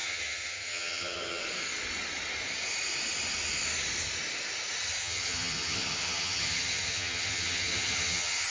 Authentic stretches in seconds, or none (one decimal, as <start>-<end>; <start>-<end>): 1.4-5.0